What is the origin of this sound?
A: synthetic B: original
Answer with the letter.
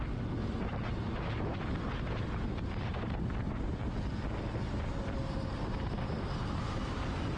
B